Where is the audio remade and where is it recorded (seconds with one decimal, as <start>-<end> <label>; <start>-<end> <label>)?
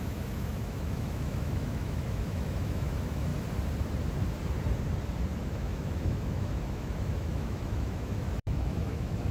0.0-3.3 remade; 3.3-5.4 recorded; 5.4-9.3 remade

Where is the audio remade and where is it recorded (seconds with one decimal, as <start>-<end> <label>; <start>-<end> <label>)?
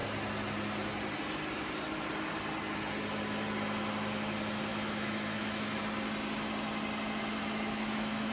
0.0-4.7 recorded; 4.7-5.8 remade; 5.8-7.4 recorded; 7.4-8.3 remade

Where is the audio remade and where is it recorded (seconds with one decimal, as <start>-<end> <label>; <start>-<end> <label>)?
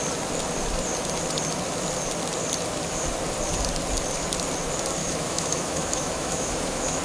0.0-5.0 recorded; 5.0-7.0 remade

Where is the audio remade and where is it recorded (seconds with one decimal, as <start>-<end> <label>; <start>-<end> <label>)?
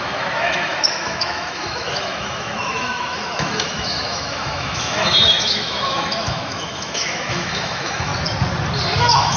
0.0-8.1 remade; 8.1-9.0 recorded; 9.0-9.4 remade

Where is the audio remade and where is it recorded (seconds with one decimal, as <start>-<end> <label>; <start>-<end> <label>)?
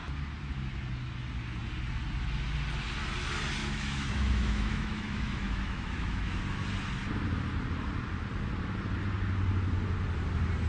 0.0-3.6 recorded; 3.6-6.4 remade; 6.4-10.7 recorded